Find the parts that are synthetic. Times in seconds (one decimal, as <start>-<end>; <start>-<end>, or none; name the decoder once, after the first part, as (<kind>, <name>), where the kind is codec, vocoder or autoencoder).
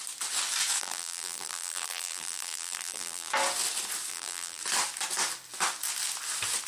0.8-3.3 (vocoder, BigVGAN v2); 4.1-4.6